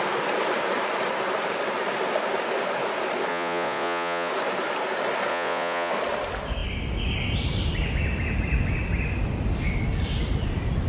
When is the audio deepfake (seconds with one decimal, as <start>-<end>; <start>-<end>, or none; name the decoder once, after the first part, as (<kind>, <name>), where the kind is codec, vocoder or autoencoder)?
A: 3.3-4.3 (vocoder, Vocos); 5.3-5.9